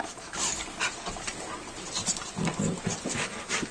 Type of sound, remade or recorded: recorded